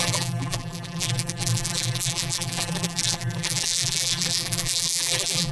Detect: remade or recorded remade